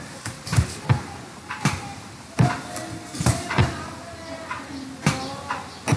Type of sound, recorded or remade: recorded